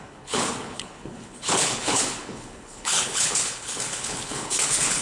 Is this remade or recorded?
remade